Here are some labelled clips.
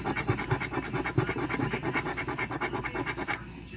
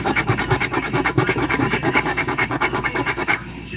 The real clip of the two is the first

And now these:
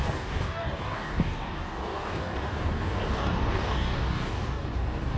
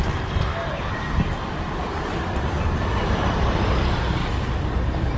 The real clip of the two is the second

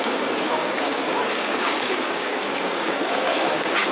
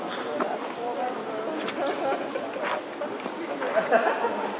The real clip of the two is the second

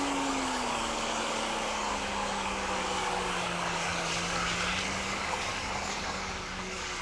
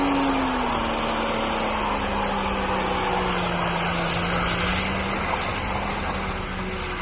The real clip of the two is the second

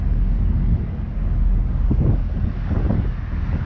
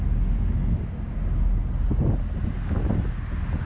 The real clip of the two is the second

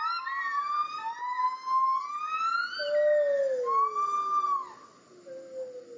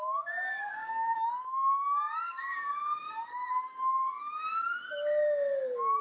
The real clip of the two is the first